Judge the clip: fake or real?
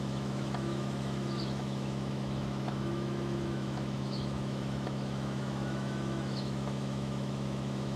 fake